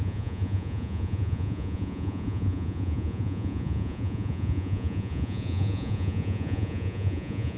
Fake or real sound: fake